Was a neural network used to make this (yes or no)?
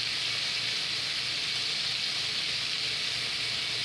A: no